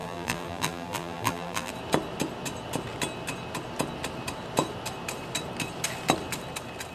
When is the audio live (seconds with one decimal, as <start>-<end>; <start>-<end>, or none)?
1.7-6.9